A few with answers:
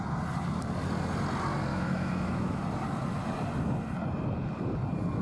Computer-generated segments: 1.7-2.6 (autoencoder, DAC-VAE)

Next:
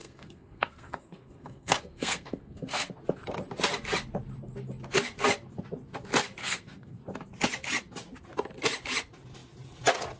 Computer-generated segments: 0.0-2.9 (codec, SNAC); 6.4-7.0

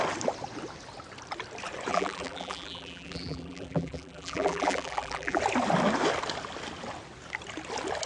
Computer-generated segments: 1.9-5.4 (vocoder, BigVGAN v2)

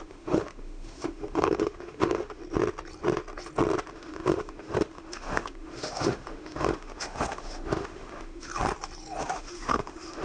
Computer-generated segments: 0.0-2.4 (autoencoder, DAC-VAE); 3.9-8.5; 9.2-10.2

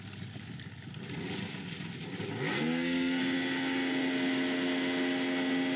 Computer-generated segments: 2.5-3.2 (codec, SNAC)

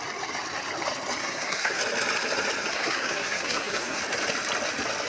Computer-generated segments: 1.2-1.8 (codec, SNAC); 2.7-4.0

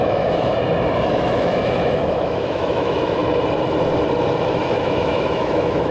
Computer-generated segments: 0.0-0.5 (autoencoder, DAC-VAE); 1.1-3.2; 4.5-5.9